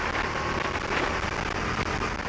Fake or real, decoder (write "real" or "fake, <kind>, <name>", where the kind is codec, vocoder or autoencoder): real